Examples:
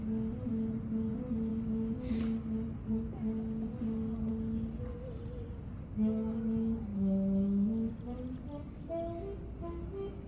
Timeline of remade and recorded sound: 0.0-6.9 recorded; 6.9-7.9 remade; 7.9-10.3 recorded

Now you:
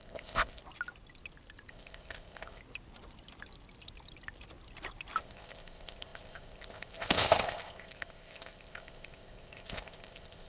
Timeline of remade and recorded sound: 0.0-0.6 remade; 0.6-1.7 recorded; 1.7-2.6 remade; 2.6-5.2 recorded; 5.2-10.5 remade

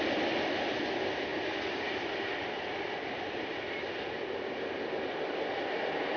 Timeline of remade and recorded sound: 0.0-6.2 recorded

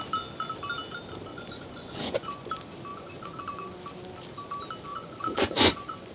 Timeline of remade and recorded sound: 0.0-1.3 recorded; 1.3-2.5 remade; 2.5-2.9 recorded; 2.9-3.7 remade; 3.7-4.9 recorded; 4.9-6.1 remade

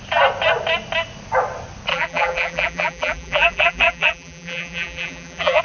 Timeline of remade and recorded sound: 0.0-1.9 recorded; 1.9-5.6 remade

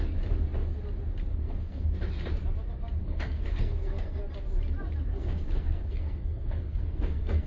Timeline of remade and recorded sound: 0.0-1.3 recorded; 1.3-1.9 remade; 1.9-3.0 recorded; 3.0-4.2 remade; 4.2-5.1 recorded; 5.1-7.5 remade